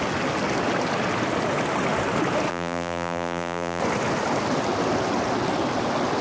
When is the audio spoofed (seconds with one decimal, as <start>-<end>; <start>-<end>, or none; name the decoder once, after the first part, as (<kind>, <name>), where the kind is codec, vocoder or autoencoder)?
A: 2.5-3.8 (vocoder, BigVGAN v2)